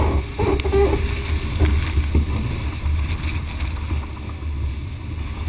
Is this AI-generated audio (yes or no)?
no